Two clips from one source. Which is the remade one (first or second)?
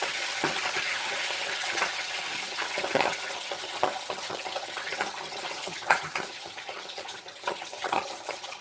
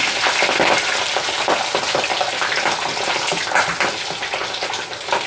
first